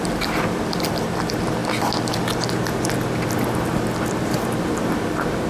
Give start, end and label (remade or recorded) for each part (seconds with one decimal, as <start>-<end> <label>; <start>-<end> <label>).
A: 0.0-5.5 recorded